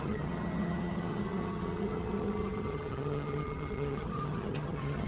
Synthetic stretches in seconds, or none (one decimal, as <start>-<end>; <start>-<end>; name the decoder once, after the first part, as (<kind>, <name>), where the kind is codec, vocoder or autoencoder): 0.0-5.1 (vocoder, HiFi-GAN)